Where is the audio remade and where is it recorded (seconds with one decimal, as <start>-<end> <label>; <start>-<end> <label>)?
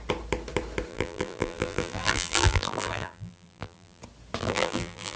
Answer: 0.0-0.9 recorded; 0.9-4.0 remade; 4.0-4.4 recorded; 4.4-5.2 remade